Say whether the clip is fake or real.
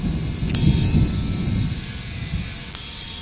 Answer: real